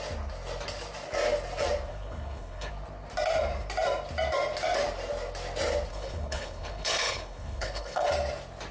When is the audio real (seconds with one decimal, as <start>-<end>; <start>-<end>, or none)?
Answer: 0.0-1.9; 2.7-5.9; 8.1-8.7

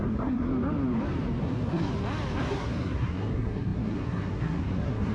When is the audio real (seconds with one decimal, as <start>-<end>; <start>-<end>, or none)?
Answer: 0.5-1.4; 1.9-2.4

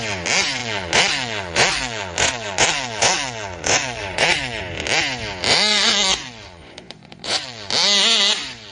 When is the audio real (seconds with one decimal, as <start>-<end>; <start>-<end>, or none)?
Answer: 0.0-0.6; 4.6-5.5; 7.7-8.7

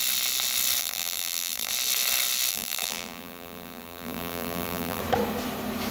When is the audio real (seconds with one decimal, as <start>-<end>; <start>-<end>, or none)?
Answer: 0.0-0.8; 1.7-2.5; 5.0-5.9

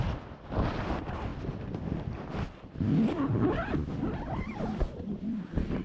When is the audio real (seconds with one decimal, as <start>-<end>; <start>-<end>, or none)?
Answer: 0.0-5.8

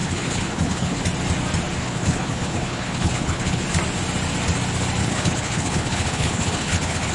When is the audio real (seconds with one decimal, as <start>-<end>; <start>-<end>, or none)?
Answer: 1.0-1.8; 3.6-5.0

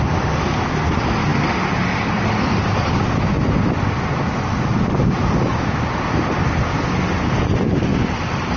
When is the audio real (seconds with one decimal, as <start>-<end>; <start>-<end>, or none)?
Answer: 0.0-4.7; 6.2-8.6

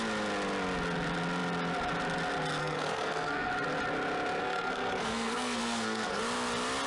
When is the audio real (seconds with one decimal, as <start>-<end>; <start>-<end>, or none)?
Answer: 0.0-2.6; 3.5-4.4; 6.2-6.9